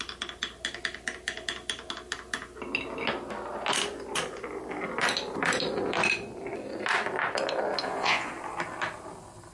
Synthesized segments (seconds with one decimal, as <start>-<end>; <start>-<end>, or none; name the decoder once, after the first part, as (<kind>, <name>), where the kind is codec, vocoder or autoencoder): 7.8-8.3 (vocoder, Vocos)